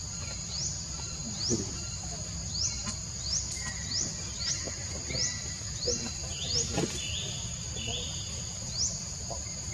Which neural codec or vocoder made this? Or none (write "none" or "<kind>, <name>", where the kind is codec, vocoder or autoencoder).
none